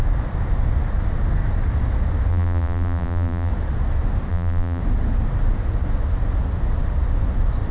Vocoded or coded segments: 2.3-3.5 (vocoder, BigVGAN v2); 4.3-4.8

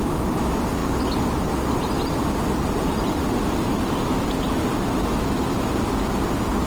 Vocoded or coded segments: none